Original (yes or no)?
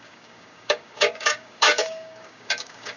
no